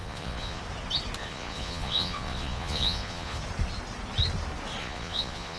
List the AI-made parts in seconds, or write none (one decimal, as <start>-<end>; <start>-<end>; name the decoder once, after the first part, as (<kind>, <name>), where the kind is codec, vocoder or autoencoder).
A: 0.0-0.6 (vocoder, Vocos); 1.2-3.4; 4.8-5.6